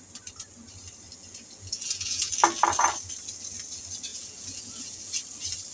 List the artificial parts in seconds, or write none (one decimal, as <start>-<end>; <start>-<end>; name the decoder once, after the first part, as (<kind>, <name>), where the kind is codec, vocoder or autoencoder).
1.2-2.3 (vocoder, Vocos); 4.1-5.1